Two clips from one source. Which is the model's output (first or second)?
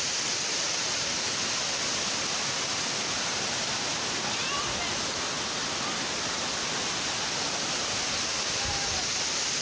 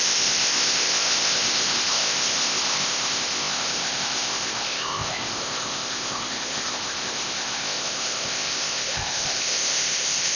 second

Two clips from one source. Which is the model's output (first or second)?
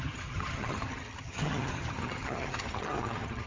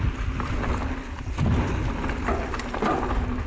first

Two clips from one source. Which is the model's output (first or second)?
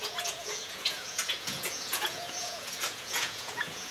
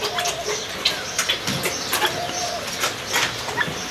first